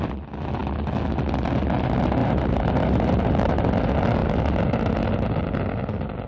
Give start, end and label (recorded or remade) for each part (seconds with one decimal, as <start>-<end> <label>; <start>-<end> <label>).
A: 0.0-2.2 recorded; 2.2-3.5 remade; 3.5-6.3 recorded